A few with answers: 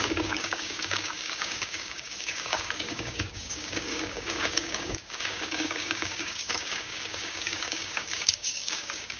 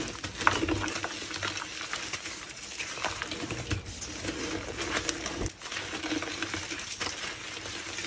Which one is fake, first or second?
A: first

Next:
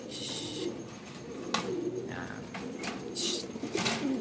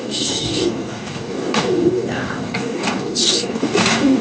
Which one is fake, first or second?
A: second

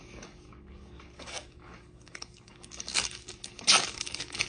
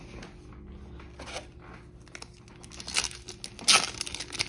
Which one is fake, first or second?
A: first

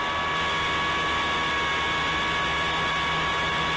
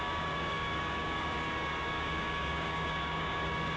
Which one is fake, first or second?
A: second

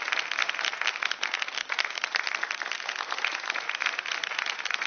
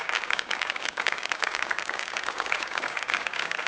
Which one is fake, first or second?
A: second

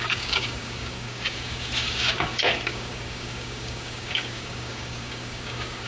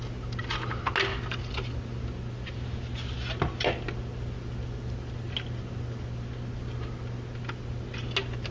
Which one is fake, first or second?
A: first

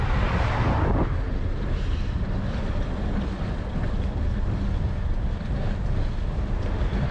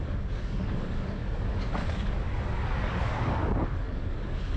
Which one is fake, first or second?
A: second